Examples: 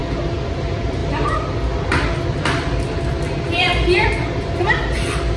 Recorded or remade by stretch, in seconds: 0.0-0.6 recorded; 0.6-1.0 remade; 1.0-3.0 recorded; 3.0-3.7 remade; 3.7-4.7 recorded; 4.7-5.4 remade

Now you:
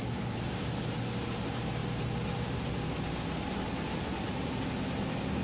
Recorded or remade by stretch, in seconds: 0.0-5.4 recorded